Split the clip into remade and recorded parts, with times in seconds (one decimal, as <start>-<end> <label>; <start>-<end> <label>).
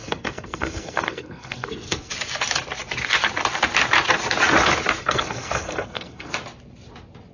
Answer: 0.0-2.1 remade; 2.1-5.0 recorded; 5.0-6.3 remade; 6.3-7.3 recorded